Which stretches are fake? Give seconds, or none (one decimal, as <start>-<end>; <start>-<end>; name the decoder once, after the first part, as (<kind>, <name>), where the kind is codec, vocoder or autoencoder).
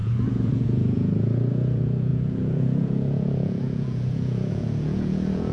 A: 0.0-5.5 (vocoder, Vocos)